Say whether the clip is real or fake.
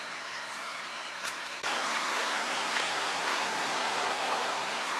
fake